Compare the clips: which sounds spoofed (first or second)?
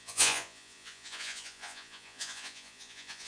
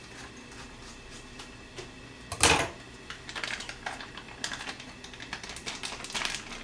first